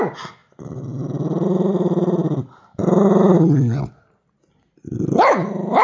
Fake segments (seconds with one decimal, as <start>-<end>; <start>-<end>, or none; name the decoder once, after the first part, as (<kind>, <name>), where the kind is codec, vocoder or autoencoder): none